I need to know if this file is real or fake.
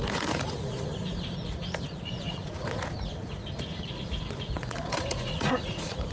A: fake